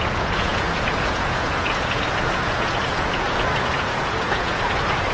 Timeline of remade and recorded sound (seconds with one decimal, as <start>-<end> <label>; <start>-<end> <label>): 0.0-5.1 remade